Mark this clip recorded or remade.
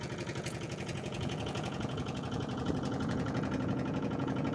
remade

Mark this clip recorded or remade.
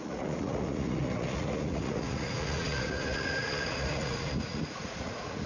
remade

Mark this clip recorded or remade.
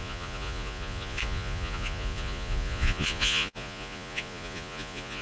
remade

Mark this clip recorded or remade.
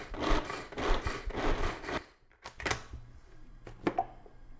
recorded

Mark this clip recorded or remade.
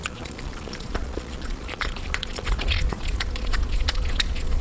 remade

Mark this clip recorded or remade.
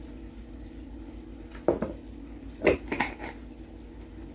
recorded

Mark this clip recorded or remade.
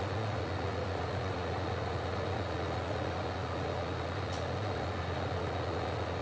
remade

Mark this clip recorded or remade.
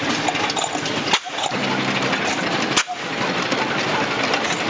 recorded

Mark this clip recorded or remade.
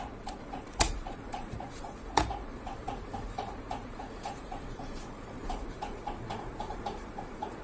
remade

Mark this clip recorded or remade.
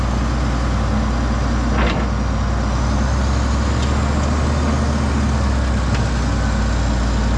recorded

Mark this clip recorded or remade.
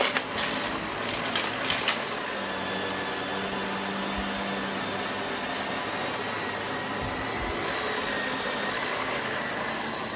recorded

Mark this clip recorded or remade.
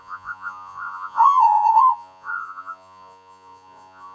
remade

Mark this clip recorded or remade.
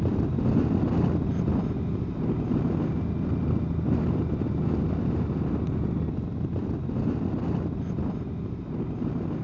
recorded